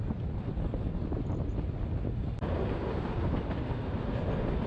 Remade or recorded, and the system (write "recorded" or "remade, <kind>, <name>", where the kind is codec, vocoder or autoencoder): recorded